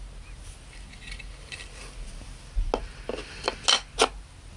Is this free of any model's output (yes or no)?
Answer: yes